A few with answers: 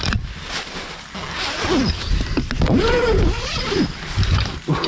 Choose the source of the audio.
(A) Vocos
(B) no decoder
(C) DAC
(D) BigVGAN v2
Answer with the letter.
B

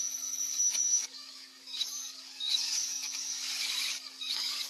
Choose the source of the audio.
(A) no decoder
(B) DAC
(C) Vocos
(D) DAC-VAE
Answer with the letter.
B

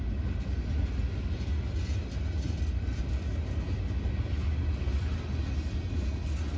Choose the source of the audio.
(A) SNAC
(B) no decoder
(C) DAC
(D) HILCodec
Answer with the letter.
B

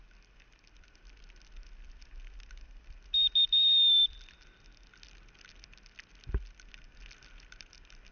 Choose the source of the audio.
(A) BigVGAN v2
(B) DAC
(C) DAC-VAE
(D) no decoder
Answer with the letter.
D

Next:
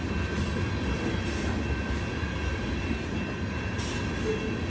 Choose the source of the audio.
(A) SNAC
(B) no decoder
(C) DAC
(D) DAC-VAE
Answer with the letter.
B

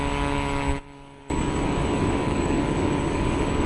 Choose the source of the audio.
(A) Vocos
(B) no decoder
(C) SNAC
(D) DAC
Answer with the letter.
D